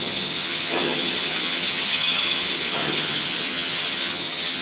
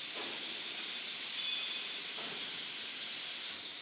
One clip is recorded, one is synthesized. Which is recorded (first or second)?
second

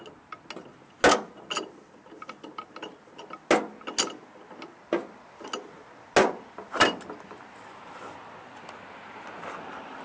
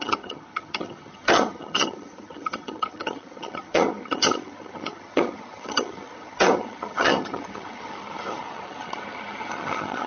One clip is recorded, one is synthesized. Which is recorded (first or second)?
first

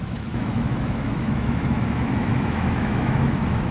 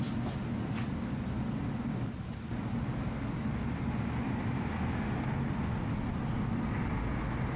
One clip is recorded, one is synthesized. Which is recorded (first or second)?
second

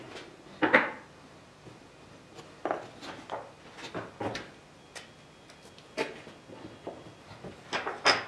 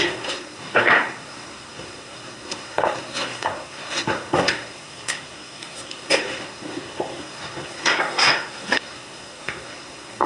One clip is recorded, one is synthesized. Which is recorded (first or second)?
first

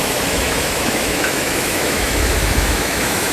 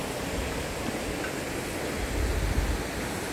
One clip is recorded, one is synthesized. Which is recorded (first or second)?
second